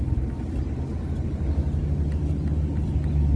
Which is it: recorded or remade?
recorded